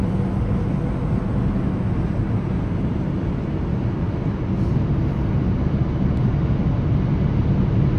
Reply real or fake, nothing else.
real